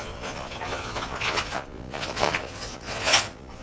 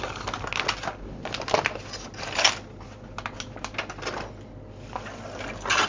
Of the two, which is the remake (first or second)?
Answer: first